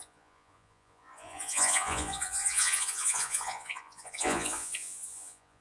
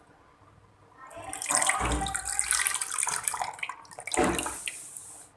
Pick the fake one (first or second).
first